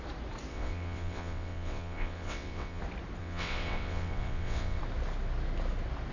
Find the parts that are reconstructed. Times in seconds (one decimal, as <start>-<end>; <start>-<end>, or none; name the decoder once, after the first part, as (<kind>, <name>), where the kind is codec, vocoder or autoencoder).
0.5-2.8 (vocoder, WaveNeXt); 3.2-4.8